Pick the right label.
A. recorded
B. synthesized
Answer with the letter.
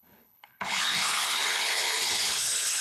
B